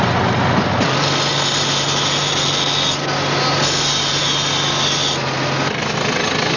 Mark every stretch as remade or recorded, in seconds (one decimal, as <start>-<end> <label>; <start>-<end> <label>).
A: 0.0-6.6 recorded